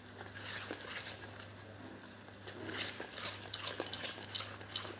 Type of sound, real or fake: real